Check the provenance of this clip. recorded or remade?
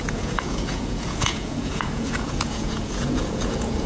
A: remade